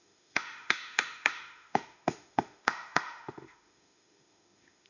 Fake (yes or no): yes